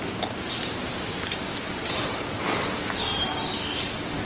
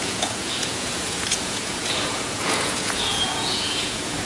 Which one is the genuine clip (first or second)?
first